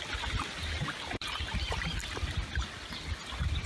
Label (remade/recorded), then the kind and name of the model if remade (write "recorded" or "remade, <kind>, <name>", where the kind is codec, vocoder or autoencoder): recorded